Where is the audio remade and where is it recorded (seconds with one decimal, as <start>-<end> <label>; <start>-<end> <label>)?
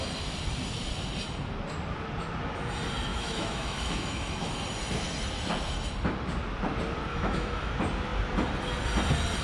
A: 0.0-3.1 recorded; 3.1-4.5 remade; 4.5-7.1 recorded; 7.1-7.7 remade; 7.7-9.4 recorded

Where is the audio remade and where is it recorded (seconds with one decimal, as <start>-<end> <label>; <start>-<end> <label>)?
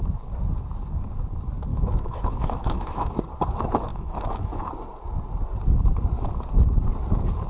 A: 0.0-1.7 recorded; 1.7-3.2 remade; 3.2-3.9 recorded; 3.9-4.7 remade; 4.7-7.5 recorded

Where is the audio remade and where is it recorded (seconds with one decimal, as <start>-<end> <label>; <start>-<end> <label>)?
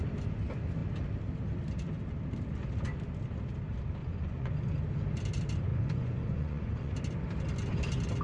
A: 0.0-4.0 recorded; 4.0-4.5 remade; 4.5-5.7 recorded; 5.7-6.9 remade; 6.9-8.2 recorded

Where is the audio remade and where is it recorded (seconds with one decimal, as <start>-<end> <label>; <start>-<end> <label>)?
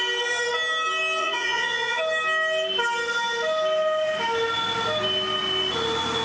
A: 0.0-1.2 recorded; 1.2-2.0 remade; 2.0-6.2 recorded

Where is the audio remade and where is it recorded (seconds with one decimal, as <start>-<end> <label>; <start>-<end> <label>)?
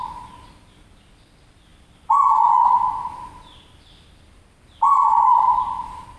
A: 0.0-6.2 recorded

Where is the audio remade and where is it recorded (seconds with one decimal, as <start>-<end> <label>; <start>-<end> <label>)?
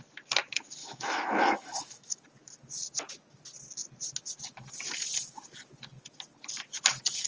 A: 0.0-0.8 recorded; 0.8-2.2 remade; 2.2-7.3 recorded